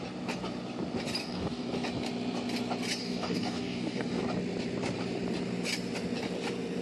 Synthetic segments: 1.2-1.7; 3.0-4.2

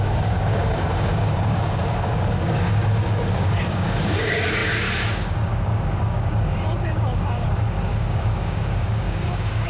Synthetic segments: 0.0-9.7

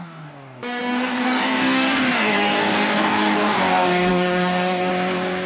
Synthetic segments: 0.0-4.9

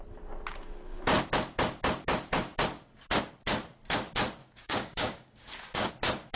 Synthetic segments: 4.4-5.9